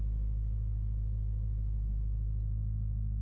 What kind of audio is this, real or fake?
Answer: real